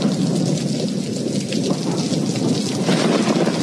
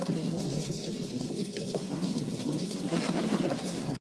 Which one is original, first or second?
first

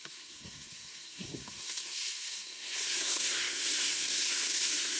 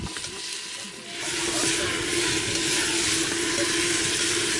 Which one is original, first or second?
second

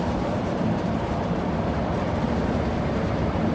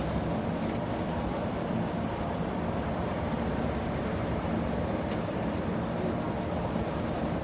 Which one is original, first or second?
second